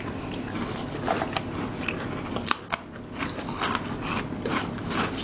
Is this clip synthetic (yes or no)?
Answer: yes